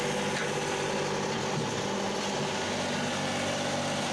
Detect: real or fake real